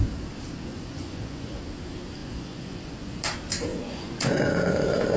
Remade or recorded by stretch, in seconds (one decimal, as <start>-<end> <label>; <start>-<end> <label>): 0.0-0.7 recorded; 0.7-1.6 remade; 1.6-2.2 recorded; 2.2-3.2 remade; 3.2-3.7 recorded; 3.7-4.5 remade; 4.5-5.2 recorded